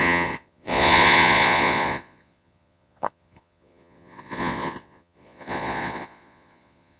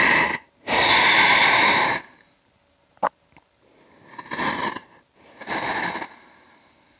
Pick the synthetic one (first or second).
first